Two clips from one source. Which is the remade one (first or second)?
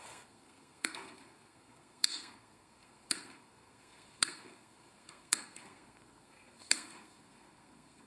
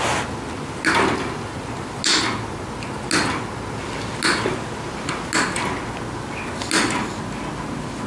first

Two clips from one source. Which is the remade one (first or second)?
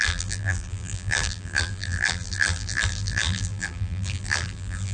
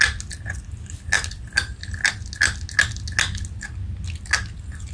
first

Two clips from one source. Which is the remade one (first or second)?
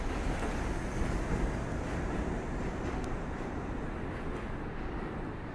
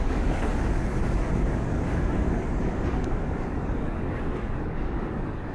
second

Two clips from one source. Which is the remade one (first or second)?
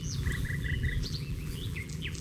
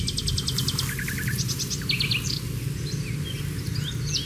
first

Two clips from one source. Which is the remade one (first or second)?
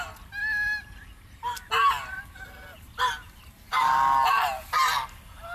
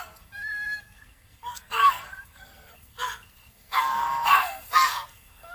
second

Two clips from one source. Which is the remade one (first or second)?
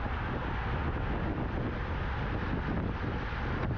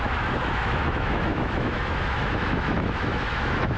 second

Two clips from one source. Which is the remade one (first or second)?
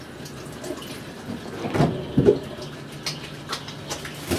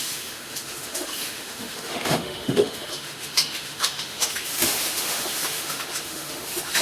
second